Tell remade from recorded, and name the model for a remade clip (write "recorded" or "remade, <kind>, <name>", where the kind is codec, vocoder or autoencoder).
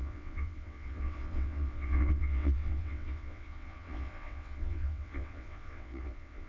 remade, vocoder, WaveNeXt